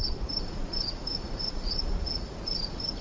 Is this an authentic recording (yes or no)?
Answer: no